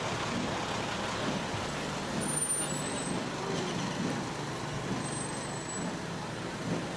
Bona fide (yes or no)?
yes